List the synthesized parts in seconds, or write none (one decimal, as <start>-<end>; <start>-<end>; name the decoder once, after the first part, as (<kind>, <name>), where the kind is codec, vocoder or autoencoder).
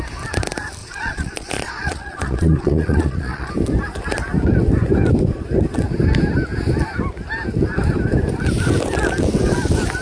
0.8-3.5 (vocoder, Vocos)